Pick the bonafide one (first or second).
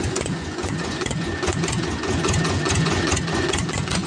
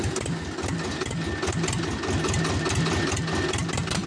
second